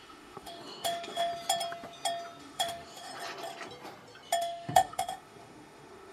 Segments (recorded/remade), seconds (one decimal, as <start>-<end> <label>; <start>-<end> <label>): 0.0-1.3 remade; 1.3-2.4 recorded; 2.4-3.1 remade; 3.1-4.4 recorded; 4.4-6.1 remade